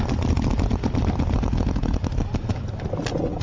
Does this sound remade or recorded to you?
recorded